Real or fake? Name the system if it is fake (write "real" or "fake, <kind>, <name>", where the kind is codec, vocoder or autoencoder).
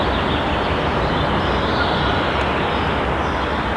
real